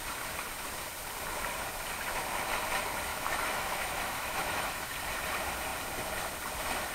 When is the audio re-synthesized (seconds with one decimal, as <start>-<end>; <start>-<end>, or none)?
3.1-4.9